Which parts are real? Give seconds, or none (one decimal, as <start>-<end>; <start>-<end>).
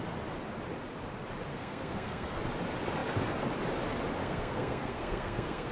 0.0-1.5; 2.4-4.2